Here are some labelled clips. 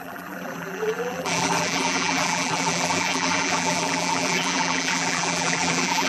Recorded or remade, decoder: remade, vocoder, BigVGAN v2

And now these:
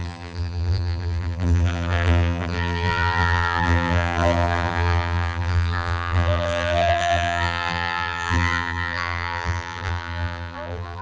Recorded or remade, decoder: remade, vocoder, BigVGAN v2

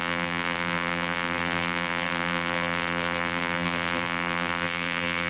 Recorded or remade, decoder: remade, vocoder, BigVGAN v2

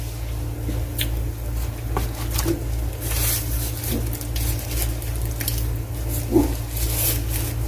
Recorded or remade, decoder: recorded